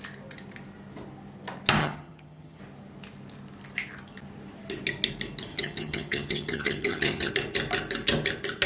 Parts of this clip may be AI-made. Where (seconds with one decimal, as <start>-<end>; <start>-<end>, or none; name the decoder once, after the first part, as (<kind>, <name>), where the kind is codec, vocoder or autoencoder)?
1.8-2.6 (vocoder, HiFi-GAN); 5.5-7.3